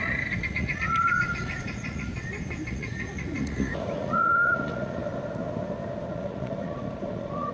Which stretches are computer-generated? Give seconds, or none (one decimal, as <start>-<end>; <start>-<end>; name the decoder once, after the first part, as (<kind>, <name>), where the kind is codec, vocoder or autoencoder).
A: 0.0-2.1 (vocoder, Vocos); 2.7-5.0; 6.1-7.5